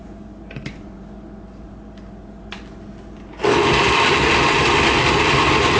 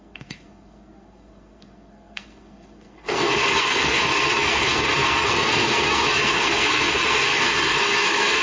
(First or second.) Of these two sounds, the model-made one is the second